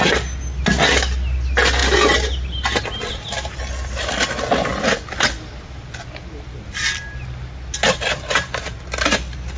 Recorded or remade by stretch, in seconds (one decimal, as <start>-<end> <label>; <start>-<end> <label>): 0.0-9.6 recorded